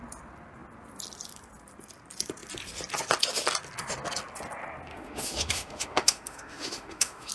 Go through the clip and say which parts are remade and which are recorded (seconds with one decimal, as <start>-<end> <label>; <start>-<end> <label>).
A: 0.0-4.9 recorded; 4.9-7.3 remade